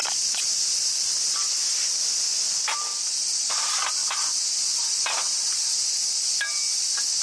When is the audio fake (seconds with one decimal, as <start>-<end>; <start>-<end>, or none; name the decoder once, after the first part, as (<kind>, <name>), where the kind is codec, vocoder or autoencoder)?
none